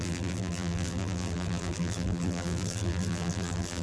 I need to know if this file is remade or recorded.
remade